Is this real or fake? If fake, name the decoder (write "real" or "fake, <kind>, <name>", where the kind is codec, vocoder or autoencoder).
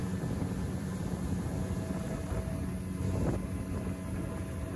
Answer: real